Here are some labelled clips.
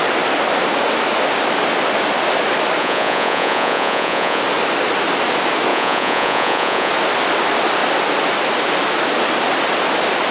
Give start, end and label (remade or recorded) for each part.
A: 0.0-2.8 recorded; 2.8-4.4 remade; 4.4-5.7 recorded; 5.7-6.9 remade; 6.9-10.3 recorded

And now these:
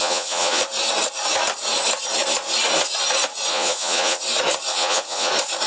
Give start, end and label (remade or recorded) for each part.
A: 0.0-0.6 remade; 0.6-3.5 recorded; 3.5-4.2 remade; 4.2-4.7 recorded; 4.7-5.3 remade; 5.3-5.7 recorded

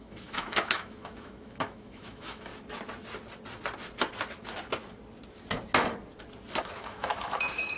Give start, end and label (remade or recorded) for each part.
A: 0.0-2.5 remade; 2.5-6.7 recorded; 6.7-7.8 remade

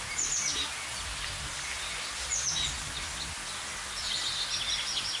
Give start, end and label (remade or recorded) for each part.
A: 0.0-5.2 recorded

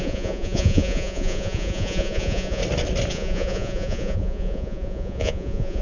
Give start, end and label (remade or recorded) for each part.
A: 0.0-2.6 remade; 2.6-3.1 recorded; 3.1-5.8 remade